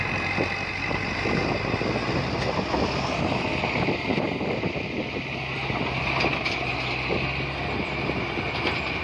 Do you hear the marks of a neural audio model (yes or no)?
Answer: no